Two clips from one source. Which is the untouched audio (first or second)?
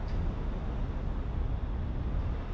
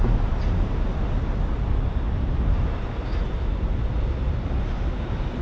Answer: first